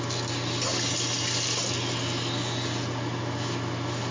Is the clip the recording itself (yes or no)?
yes